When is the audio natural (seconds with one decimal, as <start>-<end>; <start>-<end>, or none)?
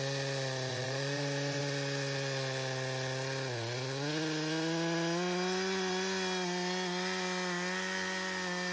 0.0-0.7; 1.6-8.7